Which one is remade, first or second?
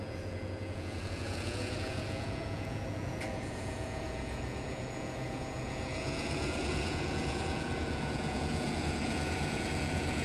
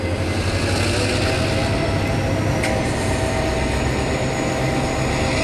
first